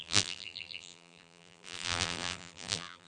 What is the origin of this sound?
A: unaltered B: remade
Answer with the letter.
B